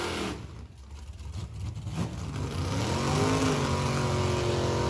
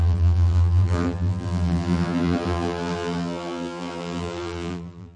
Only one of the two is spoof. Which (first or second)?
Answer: second